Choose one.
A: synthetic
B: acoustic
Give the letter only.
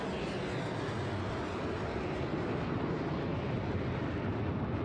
B